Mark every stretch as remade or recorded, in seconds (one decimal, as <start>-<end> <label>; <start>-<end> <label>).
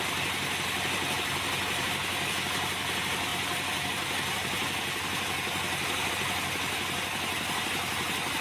0.0-8.4 recorded